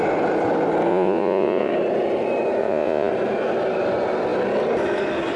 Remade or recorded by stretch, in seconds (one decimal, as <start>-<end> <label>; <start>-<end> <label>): 0.0-0.9 recorded; 0.9-1.7 remade; 1.7-2.6 recorded; 2.6-3.1 remade; 3.1-5.4 recorded